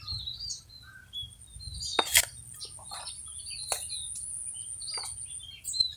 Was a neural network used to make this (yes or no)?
no